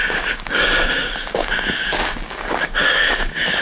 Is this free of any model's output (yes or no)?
no